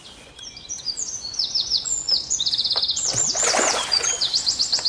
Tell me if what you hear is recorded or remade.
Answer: remade